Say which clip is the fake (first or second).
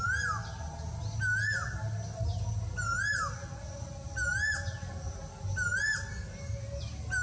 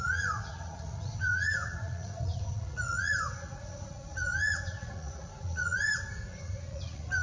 second